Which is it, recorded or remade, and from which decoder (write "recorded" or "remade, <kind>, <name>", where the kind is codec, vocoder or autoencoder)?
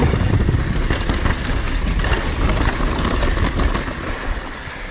recorded